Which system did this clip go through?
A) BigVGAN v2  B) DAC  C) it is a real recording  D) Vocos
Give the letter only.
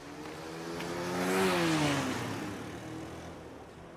C